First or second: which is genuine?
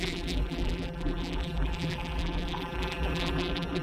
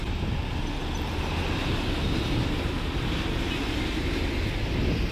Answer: second